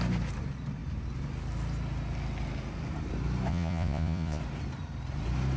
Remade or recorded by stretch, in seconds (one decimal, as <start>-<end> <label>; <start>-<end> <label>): 0.0-3.5 recorded; 3.5-4.4 remade; 4.4-5.6 recorded